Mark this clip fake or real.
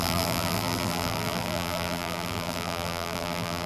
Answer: fake